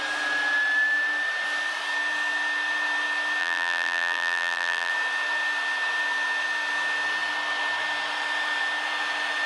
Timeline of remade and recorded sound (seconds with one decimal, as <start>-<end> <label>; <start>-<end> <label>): 0.0-3.4 recorded; 3.4-4.9 remade; 4.9-9.5 recorded